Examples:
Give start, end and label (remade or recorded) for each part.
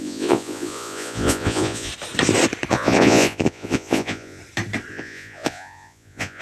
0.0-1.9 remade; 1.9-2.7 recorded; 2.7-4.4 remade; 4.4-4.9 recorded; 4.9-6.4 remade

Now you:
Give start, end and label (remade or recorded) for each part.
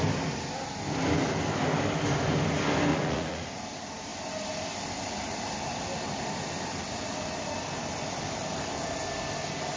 0.0-2.9 recorded; 2.9-3.5 remade; 3.5-9.8 recorded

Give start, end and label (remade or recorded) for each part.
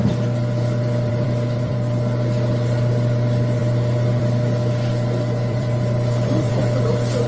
0.0-3.6 remade; 3.6-4.2 recorded; 4.2-7.3 remade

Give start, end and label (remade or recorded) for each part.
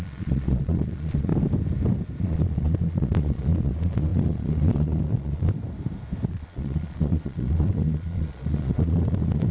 0.0-1.3 remade; 1.3-2.2 recorded; 2.2-5.5 remade; 5.5-6.3 recorded; 6.3-9.5 remade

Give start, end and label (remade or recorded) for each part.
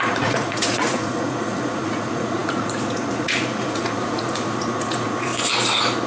0.0-5.3 remade; 5.3-6.1 recorded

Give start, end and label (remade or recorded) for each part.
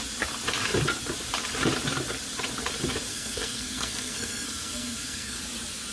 0.0-3.1 recorded; 3.1-5.4 remade; 5.4-5.9 recorded